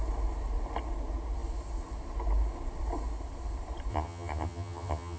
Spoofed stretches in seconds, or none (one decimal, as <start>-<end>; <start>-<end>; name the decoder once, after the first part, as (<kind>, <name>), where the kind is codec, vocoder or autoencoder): 3.9-5.2 (vocoder, HiFi-GAN)